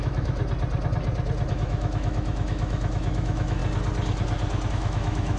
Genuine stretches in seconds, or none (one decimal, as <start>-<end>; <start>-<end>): 0.4-1.5; 3.6-4.7